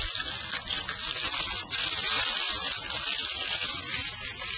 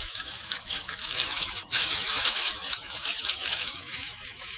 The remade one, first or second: second